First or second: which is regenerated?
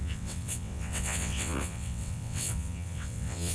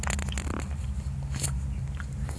first